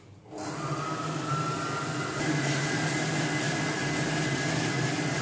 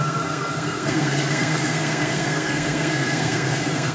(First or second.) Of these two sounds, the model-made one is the second